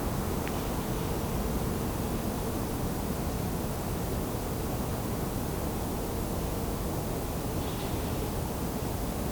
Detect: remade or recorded recorded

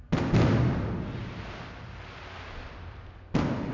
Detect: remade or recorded recorded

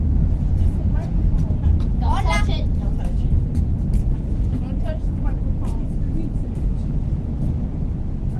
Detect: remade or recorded recorded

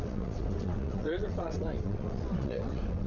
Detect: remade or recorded remade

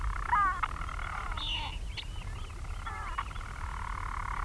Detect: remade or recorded recorded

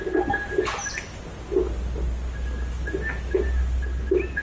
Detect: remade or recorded recorded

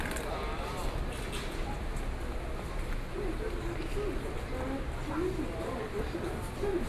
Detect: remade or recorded recorded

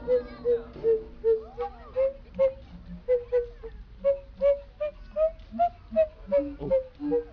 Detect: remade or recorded recorded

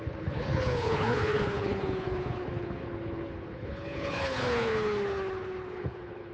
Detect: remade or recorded remade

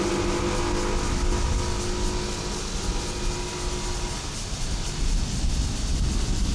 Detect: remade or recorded recorded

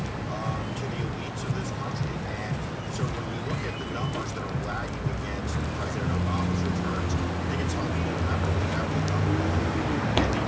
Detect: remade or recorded recorded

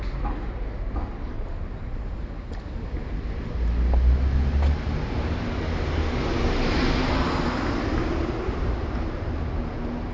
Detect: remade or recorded recorded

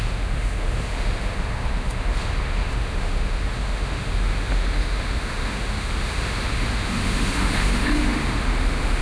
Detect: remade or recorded remade